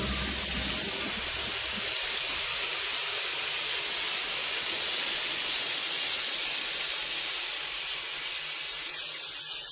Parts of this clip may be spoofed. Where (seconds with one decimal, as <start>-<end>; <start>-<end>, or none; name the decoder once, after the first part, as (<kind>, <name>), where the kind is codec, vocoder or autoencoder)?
4.4-6.1 (vocoder, Vocos)